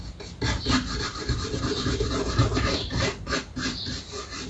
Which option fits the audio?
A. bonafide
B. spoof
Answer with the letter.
A